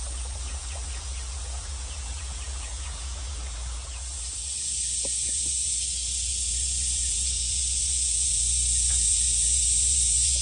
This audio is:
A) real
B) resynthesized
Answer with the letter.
B